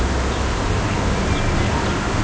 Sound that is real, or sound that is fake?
real